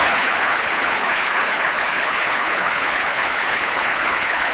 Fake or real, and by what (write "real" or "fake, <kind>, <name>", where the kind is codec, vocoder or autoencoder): fake, codec, HILCodec